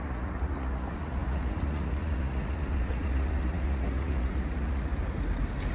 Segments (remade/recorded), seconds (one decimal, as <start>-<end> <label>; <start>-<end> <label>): 0.0-4.9 remade; 4.9-5.7 recorded